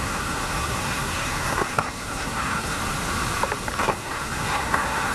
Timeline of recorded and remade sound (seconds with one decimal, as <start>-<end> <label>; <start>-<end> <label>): 0.0-2.8 remade; 2.8-3.8 recorded; 3.8-5.1 remade